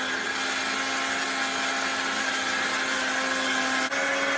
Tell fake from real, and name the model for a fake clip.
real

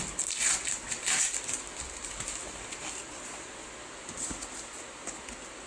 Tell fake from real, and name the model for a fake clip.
real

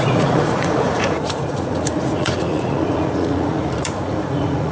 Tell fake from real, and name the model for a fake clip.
fake, vocoder, Vocos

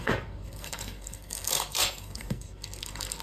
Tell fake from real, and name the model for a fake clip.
fake, codec, SNAC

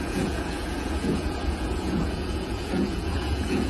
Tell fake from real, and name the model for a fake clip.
fake, vocoder, Vocos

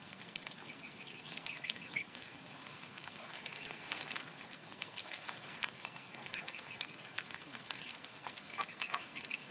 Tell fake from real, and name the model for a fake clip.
fake, codec, SNAC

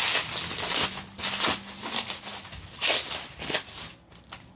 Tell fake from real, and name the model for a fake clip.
real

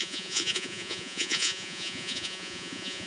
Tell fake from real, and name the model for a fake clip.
fake, vocoder, Vocos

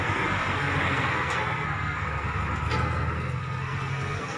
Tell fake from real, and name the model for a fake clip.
fake, codec, SNAC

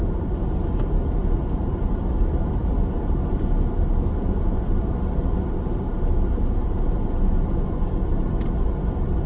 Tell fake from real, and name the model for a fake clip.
real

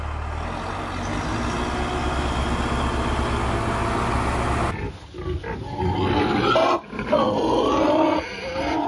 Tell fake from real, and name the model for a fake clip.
real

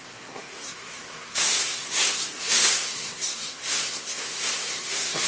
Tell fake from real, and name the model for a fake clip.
fake, codec, SNAC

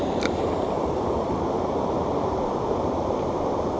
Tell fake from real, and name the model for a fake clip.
fake, vocoder, BigVGAN v2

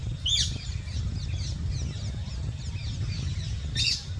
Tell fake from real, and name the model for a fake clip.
real